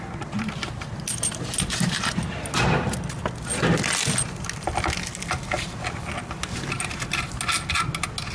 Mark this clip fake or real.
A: real